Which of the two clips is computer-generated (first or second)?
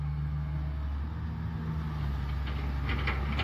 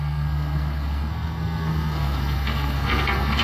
second